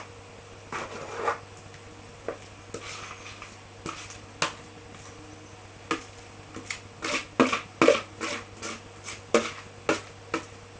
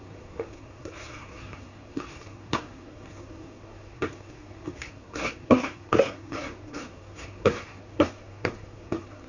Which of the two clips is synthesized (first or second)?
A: second